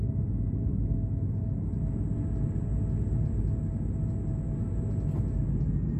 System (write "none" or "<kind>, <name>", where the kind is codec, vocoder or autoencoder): none